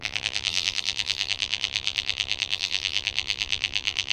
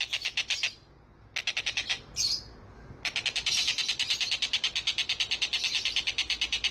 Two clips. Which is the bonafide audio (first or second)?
second